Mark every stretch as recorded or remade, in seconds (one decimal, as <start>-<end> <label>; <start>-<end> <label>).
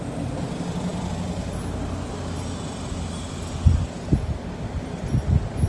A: 0.0-5.7 recorded